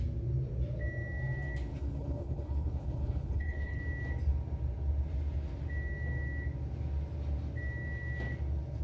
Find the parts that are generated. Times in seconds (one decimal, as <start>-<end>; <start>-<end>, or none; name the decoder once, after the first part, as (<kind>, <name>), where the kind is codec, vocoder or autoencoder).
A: 1.7-3.8 (codec, HILCodec)